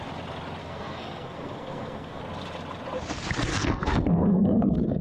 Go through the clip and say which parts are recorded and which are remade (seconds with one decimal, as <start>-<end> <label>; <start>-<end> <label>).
0.0-0.6 recorded; 0.6-2.2 remade; 2.2-3.5 recorded; 3.5-5.0 remade